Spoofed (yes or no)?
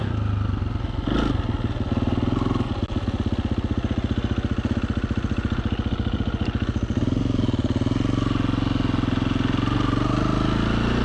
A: no